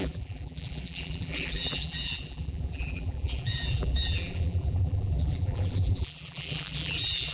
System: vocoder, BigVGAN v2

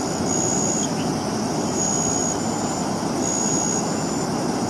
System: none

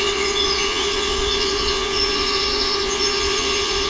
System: vocoder, Vocos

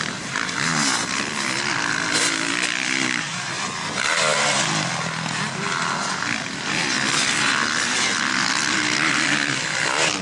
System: none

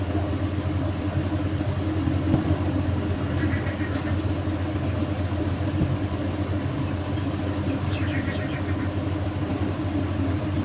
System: none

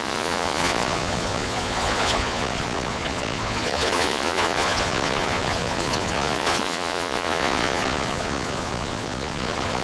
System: vocoder, Vocos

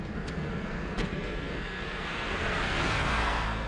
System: codec, SNAC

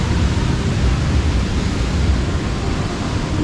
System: none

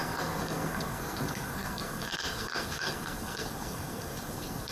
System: codec, SNAC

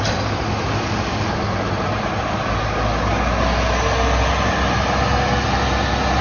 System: none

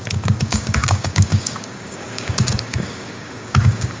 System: codec, DAC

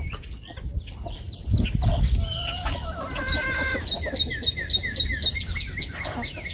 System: none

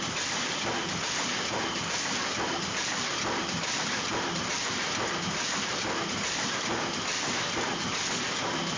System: vocoder, BigVGAN v2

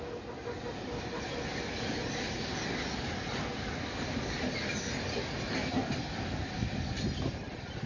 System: none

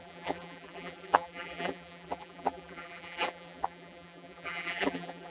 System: vocoder, BigVGAN v2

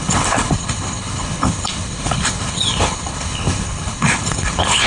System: codec, HILCodec